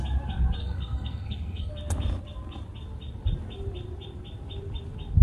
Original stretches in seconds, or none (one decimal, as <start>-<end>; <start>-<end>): 0.0-0.6; 1.7-5.2